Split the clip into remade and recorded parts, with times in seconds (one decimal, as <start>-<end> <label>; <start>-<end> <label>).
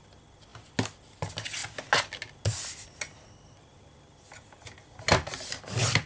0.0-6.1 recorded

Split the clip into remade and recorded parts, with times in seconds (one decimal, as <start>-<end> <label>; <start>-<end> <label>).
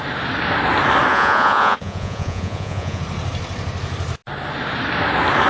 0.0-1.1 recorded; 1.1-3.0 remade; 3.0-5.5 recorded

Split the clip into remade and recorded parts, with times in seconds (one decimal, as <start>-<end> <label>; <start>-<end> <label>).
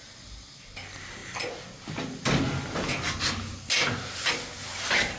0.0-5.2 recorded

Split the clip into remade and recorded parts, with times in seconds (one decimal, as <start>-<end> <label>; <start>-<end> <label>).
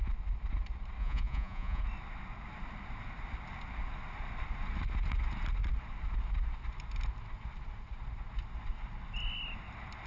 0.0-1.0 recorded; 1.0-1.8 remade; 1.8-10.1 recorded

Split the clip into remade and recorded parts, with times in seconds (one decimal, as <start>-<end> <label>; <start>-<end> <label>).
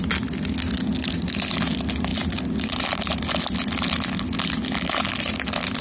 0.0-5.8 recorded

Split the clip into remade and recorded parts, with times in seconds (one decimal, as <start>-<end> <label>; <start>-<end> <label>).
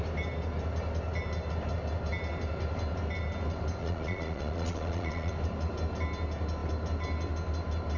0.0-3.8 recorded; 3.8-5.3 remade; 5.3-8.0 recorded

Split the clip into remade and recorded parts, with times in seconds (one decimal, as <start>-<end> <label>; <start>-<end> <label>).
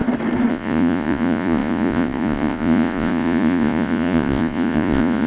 0.0-0.5 recorded; 0.5-5.3 remade